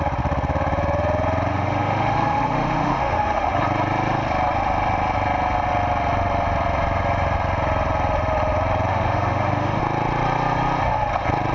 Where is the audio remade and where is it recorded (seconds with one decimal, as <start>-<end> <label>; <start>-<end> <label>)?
0.0-1.5 recorded; 1.5-3.6 remade; 3.6-8.9 recorded; 8.9-9.8 remade; 9.8-11.5 recorded